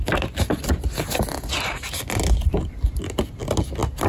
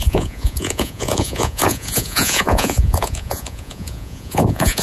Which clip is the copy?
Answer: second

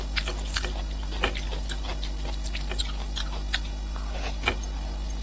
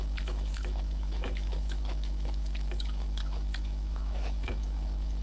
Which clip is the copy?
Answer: second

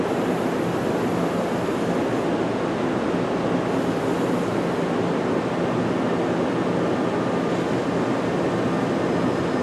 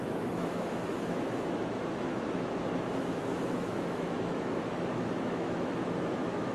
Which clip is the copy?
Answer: second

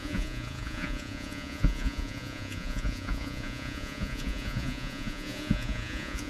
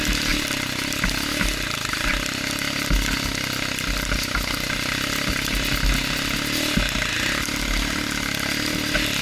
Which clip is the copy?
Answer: first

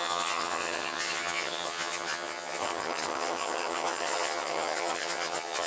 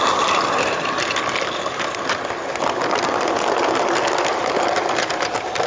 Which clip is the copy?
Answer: first